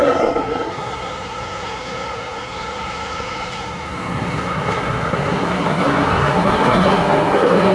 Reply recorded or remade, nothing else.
remade